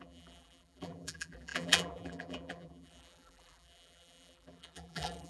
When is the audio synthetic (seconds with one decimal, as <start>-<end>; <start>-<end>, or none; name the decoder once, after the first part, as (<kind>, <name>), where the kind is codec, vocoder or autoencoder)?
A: 0.0-5.3 (vocoder, BigVGAN v2)